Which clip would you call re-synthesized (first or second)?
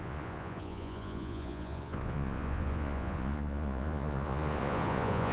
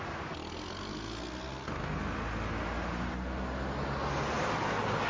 first